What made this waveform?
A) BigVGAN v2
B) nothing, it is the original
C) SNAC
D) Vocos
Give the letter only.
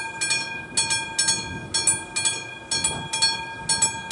B